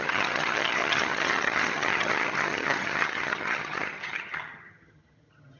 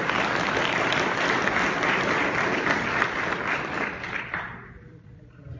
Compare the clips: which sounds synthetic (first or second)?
first